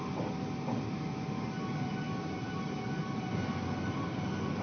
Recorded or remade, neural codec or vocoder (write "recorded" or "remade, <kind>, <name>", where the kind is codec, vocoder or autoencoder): recorded